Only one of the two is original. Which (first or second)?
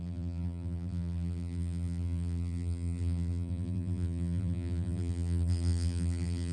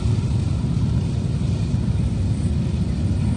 second